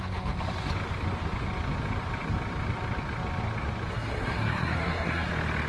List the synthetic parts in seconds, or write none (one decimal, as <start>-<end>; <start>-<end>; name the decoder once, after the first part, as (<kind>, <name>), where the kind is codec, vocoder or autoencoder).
3.9-5.3 (codec, SNAC)